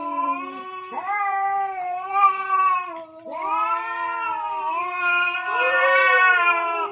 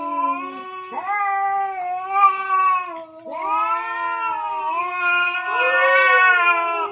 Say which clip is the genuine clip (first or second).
second